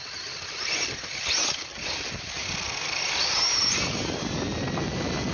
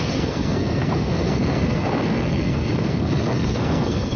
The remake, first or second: second